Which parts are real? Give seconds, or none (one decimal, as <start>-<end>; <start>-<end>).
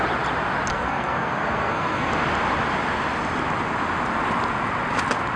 0.0-0.7; 2.1-5.4